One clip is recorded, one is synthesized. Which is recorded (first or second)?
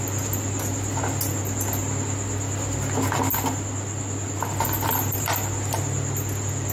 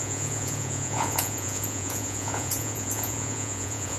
first